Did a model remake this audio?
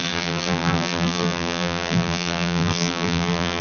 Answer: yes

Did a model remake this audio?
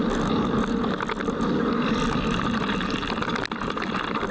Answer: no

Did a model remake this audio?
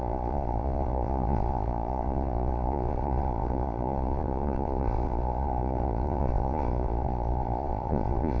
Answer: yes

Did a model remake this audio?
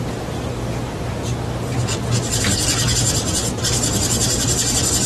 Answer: no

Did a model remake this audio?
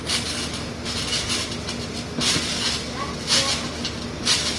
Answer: no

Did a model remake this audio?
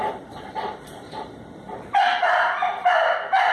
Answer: yes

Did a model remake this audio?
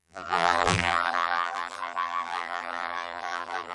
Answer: yes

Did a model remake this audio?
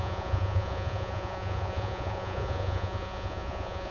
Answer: yes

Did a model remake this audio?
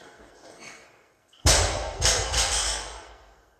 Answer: yes